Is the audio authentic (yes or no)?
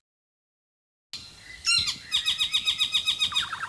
yes